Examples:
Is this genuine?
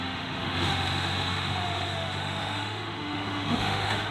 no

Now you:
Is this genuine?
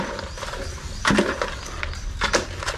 yes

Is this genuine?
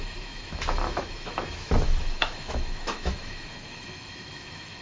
no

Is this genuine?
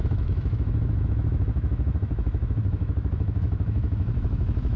no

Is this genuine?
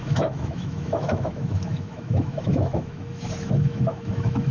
no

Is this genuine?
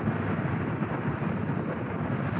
yes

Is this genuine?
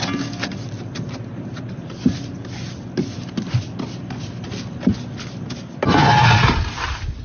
yes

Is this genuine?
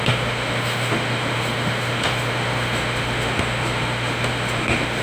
no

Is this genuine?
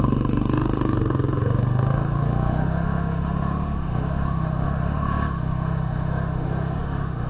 no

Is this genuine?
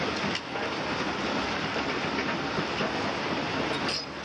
yes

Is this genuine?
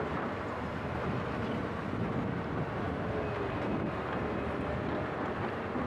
yes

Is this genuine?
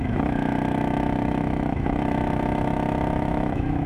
no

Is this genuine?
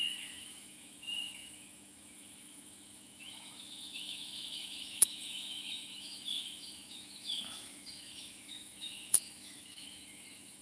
no